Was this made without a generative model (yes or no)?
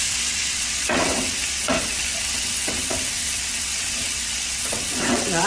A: no